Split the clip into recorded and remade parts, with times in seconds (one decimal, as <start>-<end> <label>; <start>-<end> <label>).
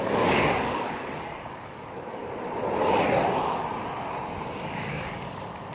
0.0-2.2 remade; 2.2-4.6 recorded; 4.6-5.7 remade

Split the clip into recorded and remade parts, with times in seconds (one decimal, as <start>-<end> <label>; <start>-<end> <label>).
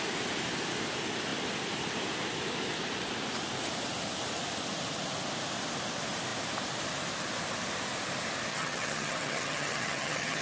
0.0-8.5 recorded; 8.5-10.4 remade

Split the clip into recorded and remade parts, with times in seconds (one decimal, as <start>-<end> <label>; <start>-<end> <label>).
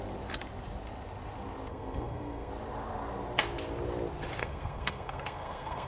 0.0-1.7 recorded; 1.7-2.5 remade; 2.5-4.4 recorded; 4.4-5.9 remade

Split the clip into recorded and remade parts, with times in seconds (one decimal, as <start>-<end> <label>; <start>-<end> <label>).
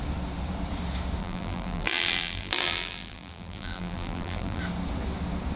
0.0-1.2 recorded; 1.2-4.6 remade; 4.6-5.6 recorded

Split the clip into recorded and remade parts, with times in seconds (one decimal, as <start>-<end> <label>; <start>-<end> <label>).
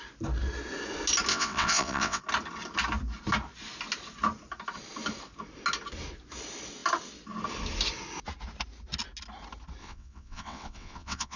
0.0-1.3 recorded; 1.3-2.2 remade; 2.2-9.8 recorded; 9.8-11.4 remade